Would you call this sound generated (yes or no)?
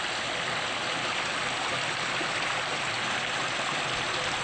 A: no